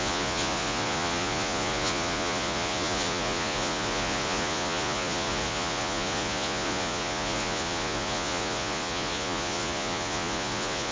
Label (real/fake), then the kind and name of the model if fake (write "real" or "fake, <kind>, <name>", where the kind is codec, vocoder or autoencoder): fake, vocoder, Vocos